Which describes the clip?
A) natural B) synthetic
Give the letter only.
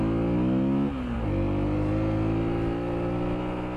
A